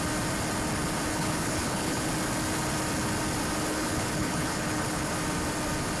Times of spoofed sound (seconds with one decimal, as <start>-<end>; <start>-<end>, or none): 1.1-2.1; 3.7-5.1